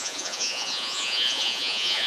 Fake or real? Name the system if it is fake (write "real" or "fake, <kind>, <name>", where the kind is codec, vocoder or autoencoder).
fake, vocoder, Vocos